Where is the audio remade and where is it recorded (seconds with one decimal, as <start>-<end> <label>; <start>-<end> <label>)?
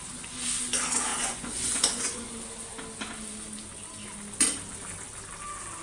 0.0-1.1 recorded; 1.1-2.3 remade; 2.3-5.8 recorded